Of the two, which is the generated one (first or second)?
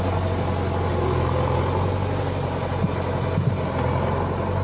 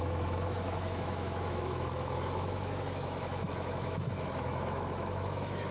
second